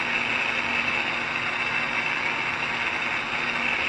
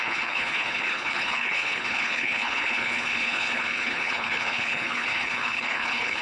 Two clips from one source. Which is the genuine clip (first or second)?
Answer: first